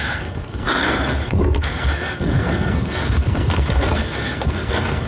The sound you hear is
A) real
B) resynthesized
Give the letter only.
B